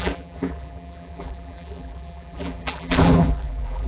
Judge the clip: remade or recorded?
remade